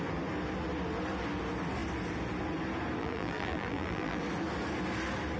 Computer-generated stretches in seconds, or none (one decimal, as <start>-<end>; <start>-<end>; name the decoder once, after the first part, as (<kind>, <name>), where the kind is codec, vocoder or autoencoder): 3.0-4.2 (vocoder, BigVGAN v2)